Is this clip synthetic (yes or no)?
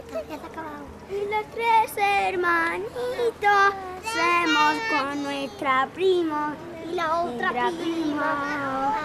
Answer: no